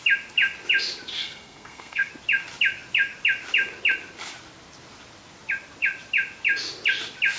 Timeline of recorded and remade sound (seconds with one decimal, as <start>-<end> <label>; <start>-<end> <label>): 0.0-1.2 recorded; 1.2-2.1 remade; 2.1-7.4 recorded